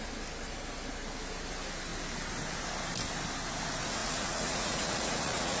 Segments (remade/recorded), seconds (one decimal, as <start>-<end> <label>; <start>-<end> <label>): 0.0-4.0 recorded; 4.0-5.6 remade